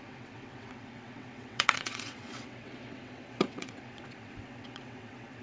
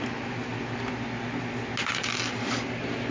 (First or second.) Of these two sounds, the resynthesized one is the first